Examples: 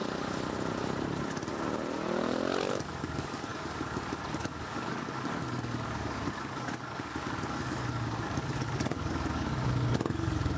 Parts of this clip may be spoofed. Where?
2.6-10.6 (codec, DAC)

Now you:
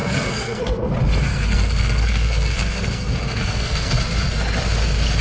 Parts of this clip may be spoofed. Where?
0.0-0.9 (codec, SNAC); 1.3-4.0

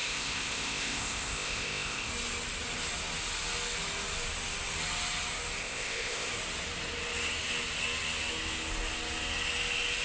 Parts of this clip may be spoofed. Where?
0.0-2.1 (codec, ZipCodec); 5.6-6.3

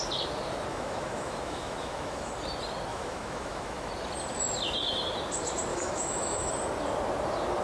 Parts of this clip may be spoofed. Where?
0.7-2.3 (autoencoder, DAC-VAE); 2.9-3.9; 5.7-6.5

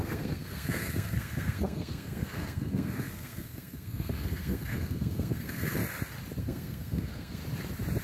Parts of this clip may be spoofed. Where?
0.0-5.8 (codec, SNAC); 6.4-7.4

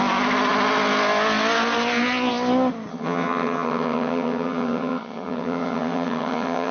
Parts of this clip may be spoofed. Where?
2.9-6.7 (vocoder, HiFi-GAN)